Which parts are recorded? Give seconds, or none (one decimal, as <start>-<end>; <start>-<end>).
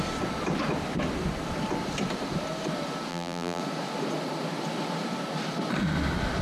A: 0.0-3.1; 3.6-6.4